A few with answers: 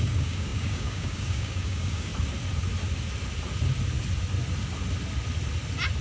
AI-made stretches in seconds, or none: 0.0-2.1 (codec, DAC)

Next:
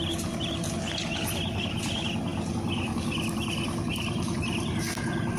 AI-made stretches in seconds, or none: none

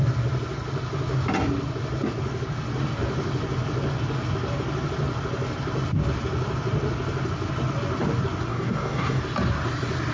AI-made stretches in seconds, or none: 8.5-9.2 (codec, DAC)

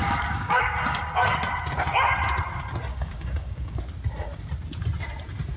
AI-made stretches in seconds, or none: 0.0-0.6 (codec, DAC); 2.9-3.8

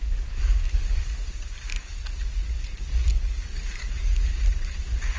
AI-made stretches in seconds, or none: 0.0-1.0 (codec, DAC); 1.7-2.5; 2.9-4.2

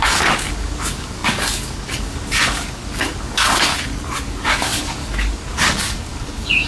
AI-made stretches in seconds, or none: 0.0-3.7 (codec, DAC); 4.2-6.7

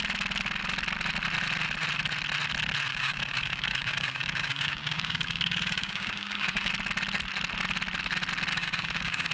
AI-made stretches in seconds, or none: 2.9-6.7 (codec, DAC); 8.5-9.3

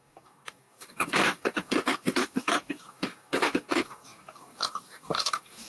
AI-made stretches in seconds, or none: 0.0-5.7 (codec, DAC)